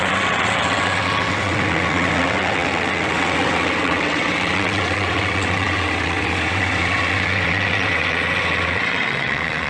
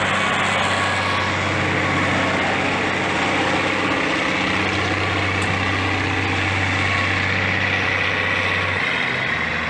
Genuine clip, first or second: second